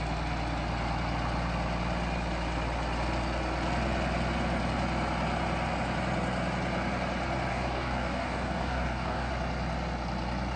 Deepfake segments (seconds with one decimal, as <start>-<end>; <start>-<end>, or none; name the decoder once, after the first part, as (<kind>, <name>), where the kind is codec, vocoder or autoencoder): 7.5-9.3 (codec, DAC)

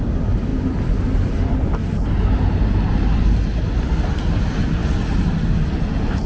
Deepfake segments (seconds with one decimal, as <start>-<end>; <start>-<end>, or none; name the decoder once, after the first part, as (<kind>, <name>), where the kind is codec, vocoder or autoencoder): none

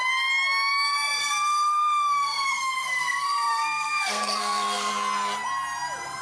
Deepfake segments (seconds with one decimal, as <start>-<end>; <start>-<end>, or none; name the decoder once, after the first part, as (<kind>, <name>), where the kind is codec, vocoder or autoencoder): 1.2-4.9 (codec, SNAC)

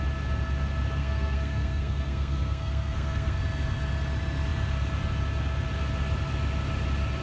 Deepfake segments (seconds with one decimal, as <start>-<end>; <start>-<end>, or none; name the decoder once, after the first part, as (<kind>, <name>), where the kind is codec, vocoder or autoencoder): 1.0-3.4 (codec, SNAC)

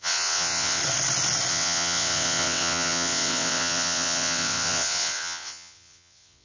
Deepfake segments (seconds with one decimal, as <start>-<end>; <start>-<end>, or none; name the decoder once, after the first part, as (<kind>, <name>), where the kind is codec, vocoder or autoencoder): 0.0-0.8 (vocoder, WaveNeXt); 1.5-6.4

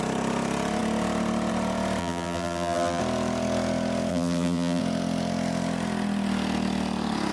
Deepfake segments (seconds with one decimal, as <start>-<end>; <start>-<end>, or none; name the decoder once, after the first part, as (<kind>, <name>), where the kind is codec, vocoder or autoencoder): 2.0-3.0 (vocoder, BigVGAN v2); 4.1-4.8

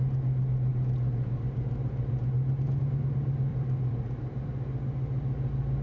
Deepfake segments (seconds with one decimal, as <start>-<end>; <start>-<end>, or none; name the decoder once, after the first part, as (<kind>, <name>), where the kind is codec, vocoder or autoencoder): 3.5-4.5 (vocoder, BigVGAN v2)

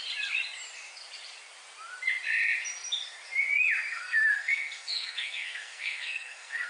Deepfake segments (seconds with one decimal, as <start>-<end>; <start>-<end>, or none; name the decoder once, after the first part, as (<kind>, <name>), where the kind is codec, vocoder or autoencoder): 3.9-6.7 (codec, SNAC)